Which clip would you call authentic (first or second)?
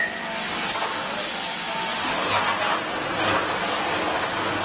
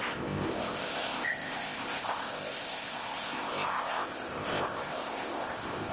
first